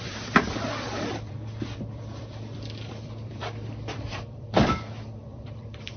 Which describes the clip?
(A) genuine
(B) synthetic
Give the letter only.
B